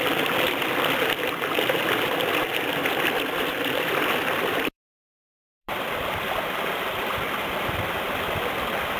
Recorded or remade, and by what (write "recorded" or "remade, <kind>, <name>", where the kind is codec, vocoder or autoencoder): remade, vocoder, BigVGAN v2